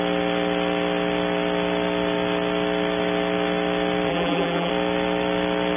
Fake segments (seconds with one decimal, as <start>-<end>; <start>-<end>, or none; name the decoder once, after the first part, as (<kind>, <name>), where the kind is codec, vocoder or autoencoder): 4.1-4.7 (vocoder, BigVGAN v2)